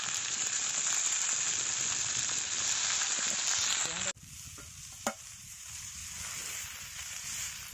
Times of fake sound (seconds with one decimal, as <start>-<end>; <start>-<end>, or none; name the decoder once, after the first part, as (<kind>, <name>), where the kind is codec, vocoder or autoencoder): 0.0-0.6 (vocoder, BigVGAN v2); 2.8-3.8; 4.8-6.0; 6.8-7.7